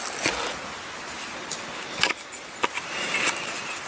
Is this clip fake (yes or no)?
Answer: no